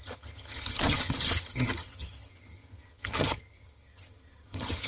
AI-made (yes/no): yes